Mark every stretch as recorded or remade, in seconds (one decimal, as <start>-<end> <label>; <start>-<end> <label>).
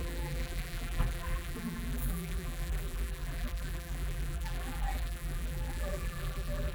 0.0-6.7 remade